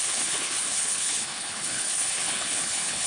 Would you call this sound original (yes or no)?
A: no